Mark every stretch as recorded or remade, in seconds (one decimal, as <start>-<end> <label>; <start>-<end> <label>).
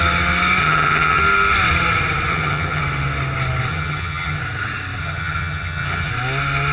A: 0.0-0.6 recorded; 0.6-1.2 remade; 1.2-2.3 recorded; 2.3-2.8 remade; 2.8-3.7 recorded; 3.7-4.4 remade; 4.4-5.0 recorded; 5.0-6.1 remade; 6.1-6.7 recorded